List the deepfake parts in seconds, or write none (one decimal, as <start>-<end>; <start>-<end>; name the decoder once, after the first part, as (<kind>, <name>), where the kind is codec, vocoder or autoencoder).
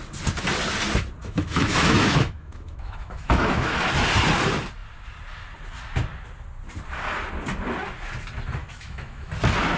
1.2-3.8 (autoencoder, DAC-VAE); 8.6-9.3